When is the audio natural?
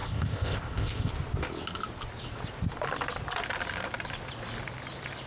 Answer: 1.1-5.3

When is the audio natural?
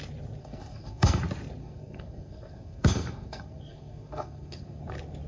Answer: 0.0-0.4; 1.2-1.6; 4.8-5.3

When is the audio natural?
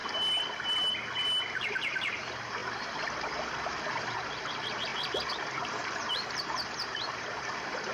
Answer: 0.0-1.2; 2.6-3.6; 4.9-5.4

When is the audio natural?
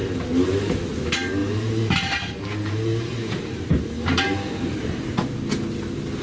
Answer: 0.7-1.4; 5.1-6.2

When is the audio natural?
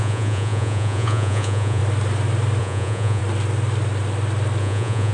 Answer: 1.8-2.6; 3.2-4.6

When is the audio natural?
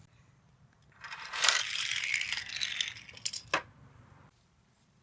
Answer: 1.9-4.2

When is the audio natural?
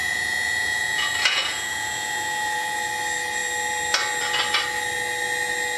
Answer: 2.9-5.8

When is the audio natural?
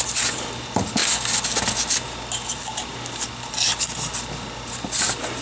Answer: 0.0-5.4